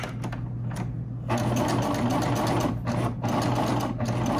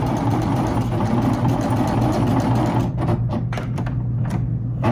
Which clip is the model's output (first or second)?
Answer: second